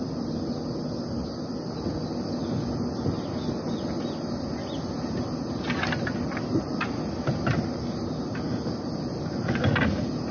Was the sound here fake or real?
real